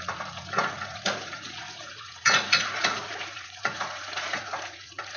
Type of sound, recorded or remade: remade